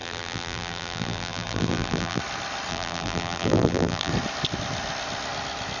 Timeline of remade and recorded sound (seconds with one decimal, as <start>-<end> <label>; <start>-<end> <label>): 0.0-2.2 remade; 2.2-2.7 recorded; 2.7-4.1 remade; 4.1-5.8 recorded